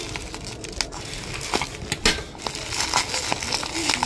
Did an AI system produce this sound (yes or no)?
no